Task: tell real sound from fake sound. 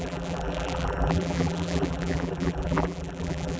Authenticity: fake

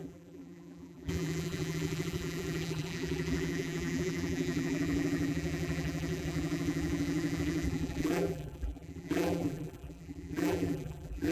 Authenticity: fake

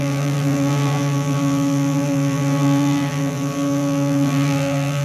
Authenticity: fake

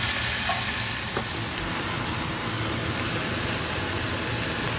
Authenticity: real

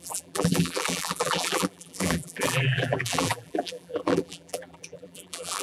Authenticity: fake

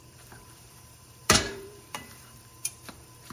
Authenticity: fake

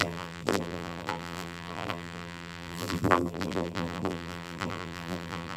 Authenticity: fake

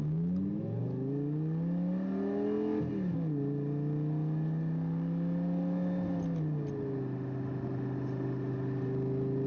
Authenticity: real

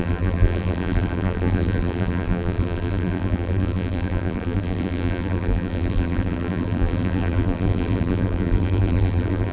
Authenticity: fake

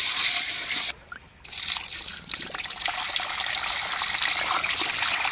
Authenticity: real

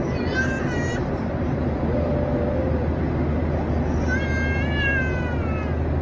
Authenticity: real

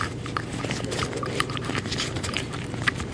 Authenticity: fake